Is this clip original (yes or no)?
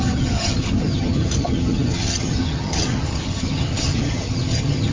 no